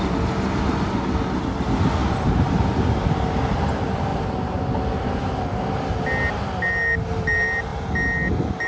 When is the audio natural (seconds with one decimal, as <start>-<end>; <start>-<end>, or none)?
0.0-2.0; 3.1-8.7